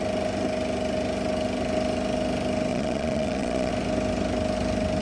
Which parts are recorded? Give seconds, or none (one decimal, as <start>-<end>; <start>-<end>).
0.0-2.7; 3.7-5.0